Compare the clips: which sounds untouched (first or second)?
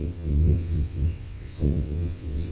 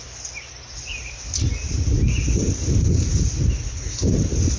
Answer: second